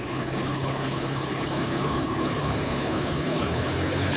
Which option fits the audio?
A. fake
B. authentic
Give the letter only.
A